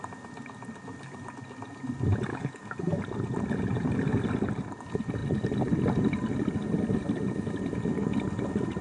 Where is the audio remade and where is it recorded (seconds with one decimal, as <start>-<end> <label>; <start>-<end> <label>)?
0.0-2.3 recorded; 2.3-3.0 remade; 3.0-8.8 recorded